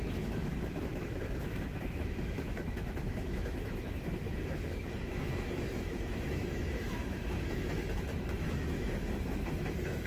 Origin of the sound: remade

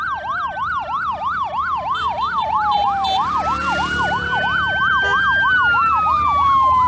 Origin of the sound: recorded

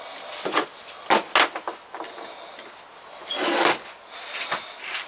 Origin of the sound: recorded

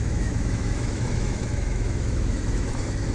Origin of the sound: remade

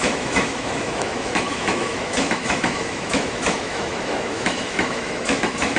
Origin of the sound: remade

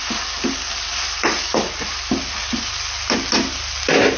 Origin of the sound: recorded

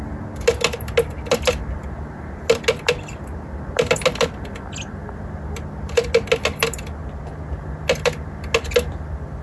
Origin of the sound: recorded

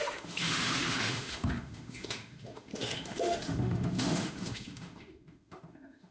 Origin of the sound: remade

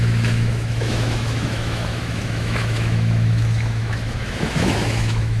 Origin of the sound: remade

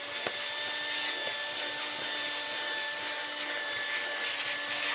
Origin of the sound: recorded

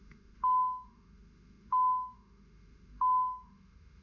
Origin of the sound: remade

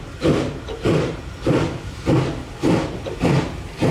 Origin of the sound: recorded